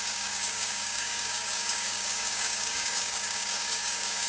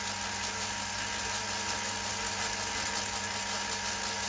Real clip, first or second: second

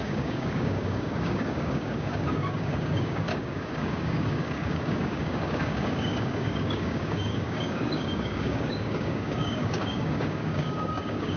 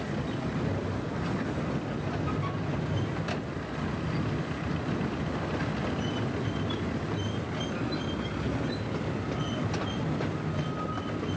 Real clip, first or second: second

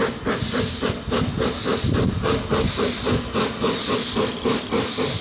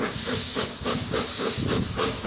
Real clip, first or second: first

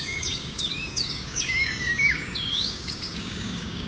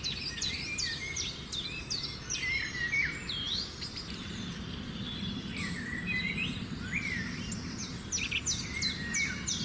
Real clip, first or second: second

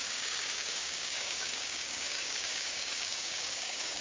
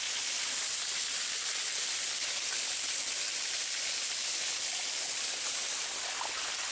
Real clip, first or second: second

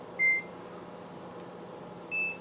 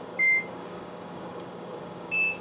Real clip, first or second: first